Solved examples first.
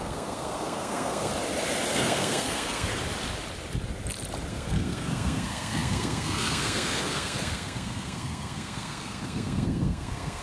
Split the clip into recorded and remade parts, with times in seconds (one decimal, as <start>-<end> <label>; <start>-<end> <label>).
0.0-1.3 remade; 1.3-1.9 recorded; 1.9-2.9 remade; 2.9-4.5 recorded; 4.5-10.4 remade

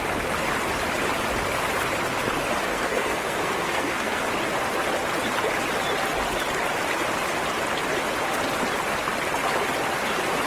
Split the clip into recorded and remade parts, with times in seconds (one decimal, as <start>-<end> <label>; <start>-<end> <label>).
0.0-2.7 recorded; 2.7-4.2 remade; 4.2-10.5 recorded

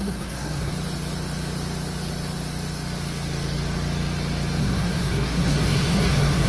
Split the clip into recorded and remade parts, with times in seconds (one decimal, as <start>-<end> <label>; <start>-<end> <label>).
0.0-0.7 remade; 0.7-4.6 recorded; 4.6-6.5 remade

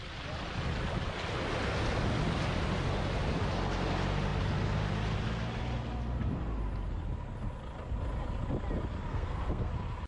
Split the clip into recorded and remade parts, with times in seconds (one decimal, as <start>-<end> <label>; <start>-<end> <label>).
0.0-9.1 recorded; 9.1-9.7 remade; 9.7-10.1 recorded

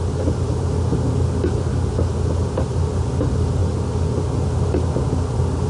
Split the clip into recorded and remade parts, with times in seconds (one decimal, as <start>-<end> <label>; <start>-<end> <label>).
0.0-5.7 recorded